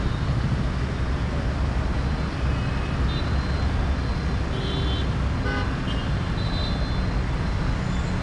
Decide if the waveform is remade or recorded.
recorded